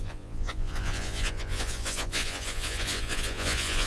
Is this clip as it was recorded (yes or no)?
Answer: no